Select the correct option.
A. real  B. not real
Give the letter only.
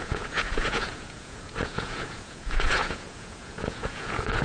B